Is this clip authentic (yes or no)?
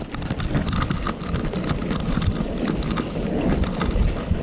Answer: yes